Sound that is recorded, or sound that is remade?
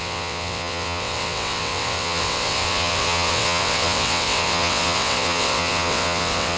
remade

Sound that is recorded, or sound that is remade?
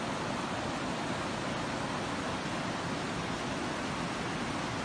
recorded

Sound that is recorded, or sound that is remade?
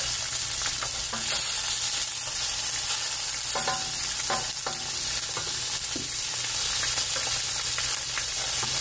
recorded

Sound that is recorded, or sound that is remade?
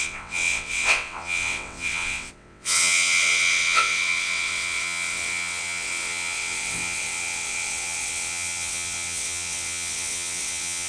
remade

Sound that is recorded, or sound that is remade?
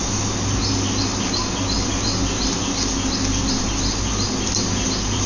recorded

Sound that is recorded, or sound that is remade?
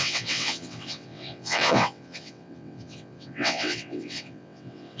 remade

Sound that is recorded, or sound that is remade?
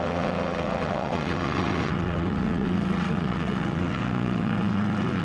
remade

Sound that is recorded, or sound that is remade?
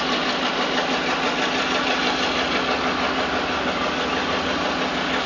recorded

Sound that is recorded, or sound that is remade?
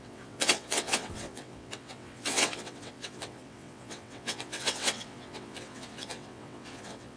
remade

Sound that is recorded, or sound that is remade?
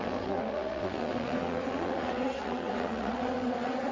remade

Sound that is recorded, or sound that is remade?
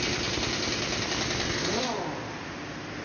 recorded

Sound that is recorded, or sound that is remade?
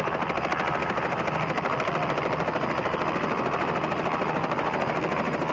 recorded